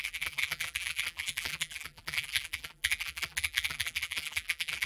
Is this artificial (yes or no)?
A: yes